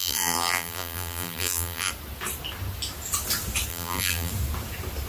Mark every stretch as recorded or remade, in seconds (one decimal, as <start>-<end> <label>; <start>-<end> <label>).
0.0-1.9 remade; 1.9-3.7 recorded; 3.7-4.3 remade; 4.3-5.1 recorded